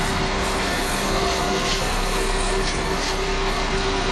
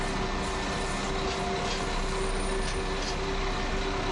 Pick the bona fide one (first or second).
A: second